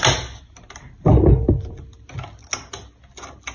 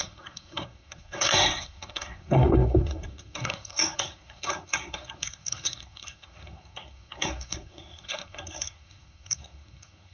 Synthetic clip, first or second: second